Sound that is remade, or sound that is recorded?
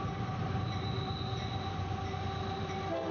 recorded